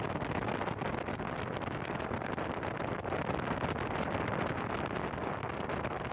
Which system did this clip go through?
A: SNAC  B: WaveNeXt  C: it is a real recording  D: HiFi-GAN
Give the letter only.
C